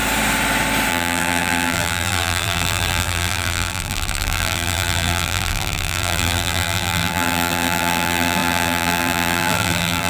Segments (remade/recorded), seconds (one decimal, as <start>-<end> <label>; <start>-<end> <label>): 0.0-0.9 recorded; 0.9-10.1 remade